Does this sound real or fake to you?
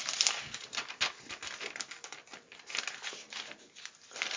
real